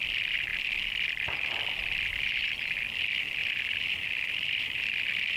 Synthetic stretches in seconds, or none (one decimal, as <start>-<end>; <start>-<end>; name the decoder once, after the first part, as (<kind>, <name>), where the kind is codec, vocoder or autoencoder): 3.4-4.8 (vocoder, BigVGAN v2)